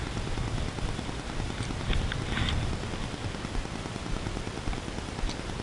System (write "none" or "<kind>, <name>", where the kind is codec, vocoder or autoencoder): none